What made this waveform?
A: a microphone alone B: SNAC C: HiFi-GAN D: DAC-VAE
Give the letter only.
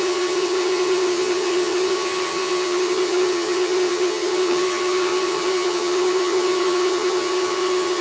C